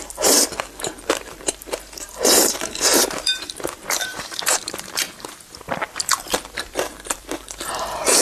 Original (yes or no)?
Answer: no